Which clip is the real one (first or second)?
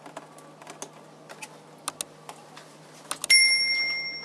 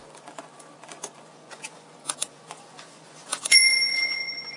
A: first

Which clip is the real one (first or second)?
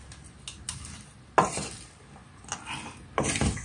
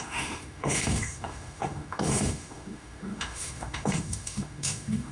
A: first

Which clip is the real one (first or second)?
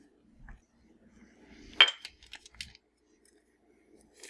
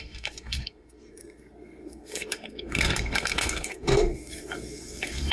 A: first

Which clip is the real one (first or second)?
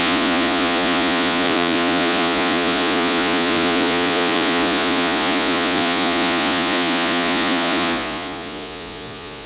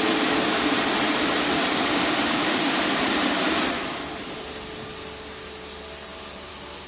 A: second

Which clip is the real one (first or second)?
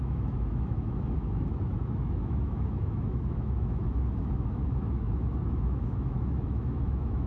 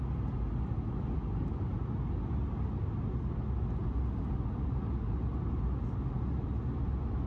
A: second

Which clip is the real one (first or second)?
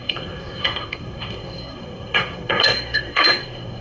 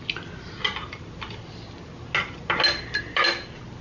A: second